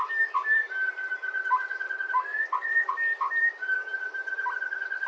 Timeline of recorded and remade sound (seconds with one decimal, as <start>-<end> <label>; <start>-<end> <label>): 0.0-2.3 recorded; 2.3-2.9 remade; 2.9-5.1 recorded